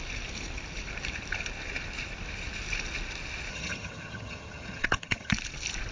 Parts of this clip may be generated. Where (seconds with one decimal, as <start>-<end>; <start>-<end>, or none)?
3.5-5.3